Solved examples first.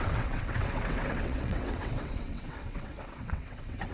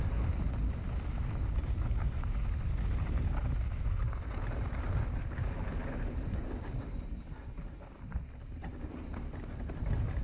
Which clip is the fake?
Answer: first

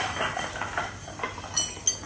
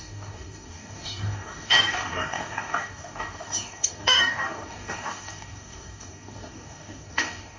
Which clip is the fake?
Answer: second